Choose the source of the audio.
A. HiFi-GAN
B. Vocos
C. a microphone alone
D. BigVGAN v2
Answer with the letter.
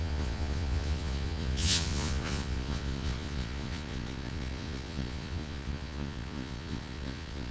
B